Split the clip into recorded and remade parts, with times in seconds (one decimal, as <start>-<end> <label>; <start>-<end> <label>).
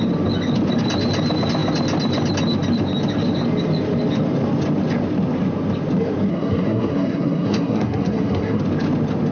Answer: 0.0-6.3 recorded; 6.3-8.6 remade; 8.6-9.3 recorded